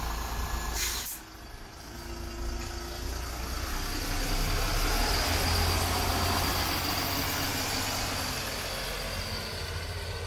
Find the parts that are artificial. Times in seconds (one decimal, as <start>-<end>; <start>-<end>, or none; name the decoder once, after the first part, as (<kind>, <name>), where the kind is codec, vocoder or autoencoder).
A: none